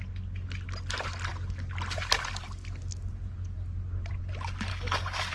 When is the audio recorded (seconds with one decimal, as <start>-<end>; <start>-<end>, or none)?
0.0-4.7